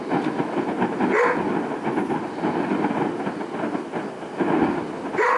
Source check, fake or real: real